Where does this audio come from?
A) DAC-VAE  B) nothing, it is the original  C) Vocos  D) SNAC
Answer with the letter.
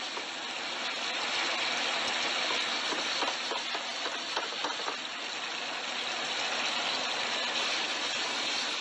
B